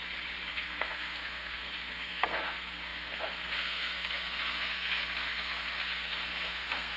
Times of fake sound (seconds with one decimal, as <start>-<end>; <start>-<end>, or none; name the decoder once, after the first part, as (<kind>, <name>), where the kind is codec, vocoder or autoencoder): 0.5-7.0 (codec, SNAC)